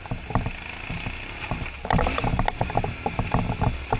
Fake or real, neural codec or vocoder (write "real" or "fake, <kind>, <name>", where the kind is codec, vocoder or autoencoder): real